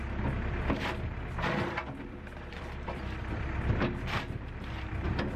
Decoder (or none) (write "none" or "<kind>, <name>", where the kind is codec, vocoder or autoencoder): vocoder, BigVGAN v2